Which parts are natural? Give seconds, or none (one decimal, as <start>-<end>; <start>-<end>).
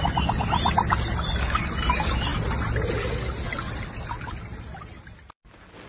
0.0-5.9